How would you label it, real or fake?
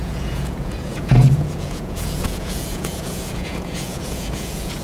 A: fake